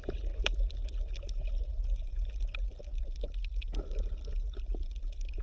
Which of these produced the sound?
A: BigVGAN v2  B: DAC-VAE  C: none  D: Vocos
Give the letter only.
C